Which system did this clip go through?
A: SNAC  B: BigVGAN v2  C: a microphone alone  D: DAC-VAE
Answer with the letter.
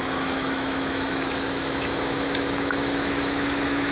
D